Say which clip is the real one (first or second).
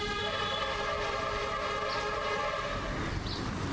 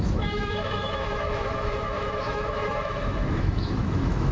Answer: first